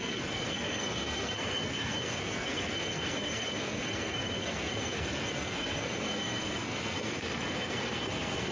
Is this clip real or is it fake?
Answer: fake